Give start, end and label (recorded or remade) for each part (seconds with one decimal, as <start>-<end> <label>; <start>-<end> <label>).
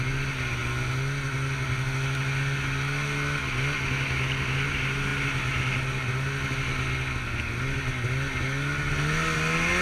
0.0-9.8 recorded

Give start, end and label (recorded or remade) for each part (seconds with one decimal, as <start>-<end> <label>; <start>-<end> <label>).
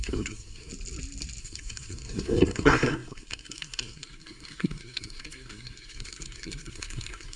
0.0-0.7 remade; 0.7-1.4 recorded; 1.4-7.4 remade